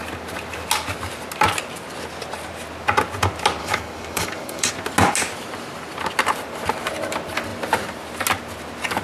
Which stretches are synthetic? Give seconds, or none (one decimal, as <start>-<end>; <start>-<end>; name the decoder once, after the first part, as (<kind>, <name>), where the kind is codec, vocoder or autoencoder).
3.6-4.7 (codec, DAC)